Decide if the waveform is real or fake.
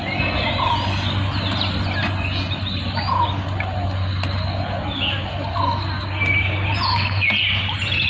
real